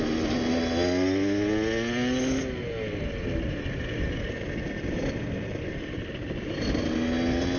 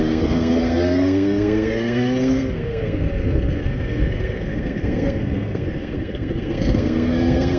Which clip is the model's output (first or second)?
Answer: second